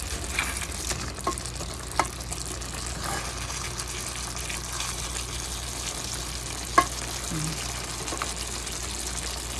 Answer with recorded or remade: recorded